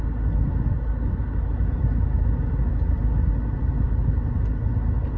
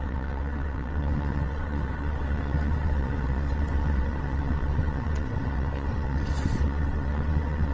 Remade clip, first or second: second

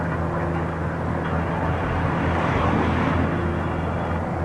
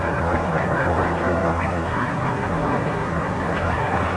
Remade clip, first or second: second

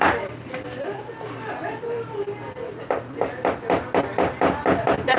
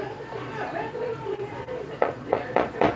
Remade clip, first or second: second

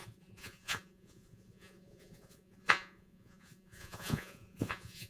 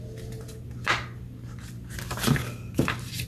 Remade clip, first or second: first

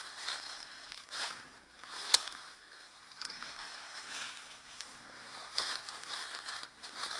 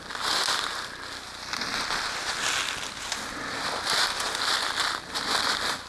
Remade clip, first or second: first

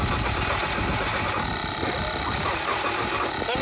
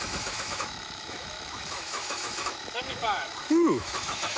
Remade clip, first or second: second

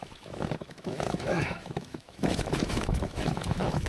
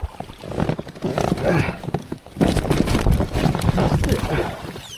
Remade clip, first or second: first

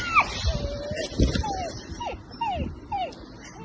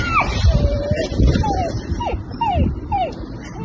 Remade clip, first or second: second